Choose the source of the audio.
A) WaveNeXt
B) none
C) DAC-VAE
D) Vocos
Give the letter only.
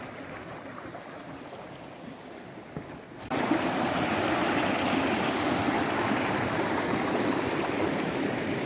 B